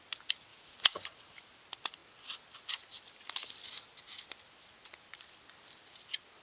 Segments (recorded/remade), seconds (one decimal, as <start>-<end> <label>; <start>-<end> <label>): 0.0-0.5 recorded; 0.5-1.3 remade; 1.3-6.4 recorded